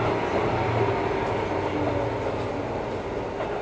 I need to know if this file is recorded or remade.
recorded